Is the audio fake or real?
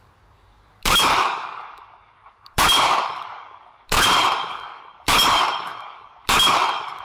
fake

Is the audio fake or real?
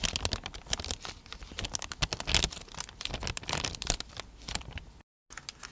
real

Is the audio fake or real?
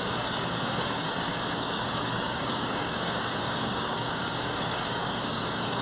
fake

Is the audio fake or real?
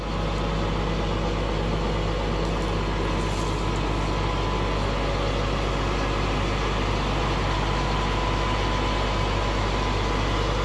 real